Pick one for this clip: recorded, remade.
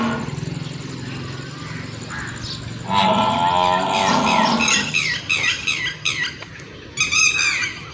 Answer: recorded